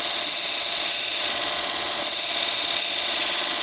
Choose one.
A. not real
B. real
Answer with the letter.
A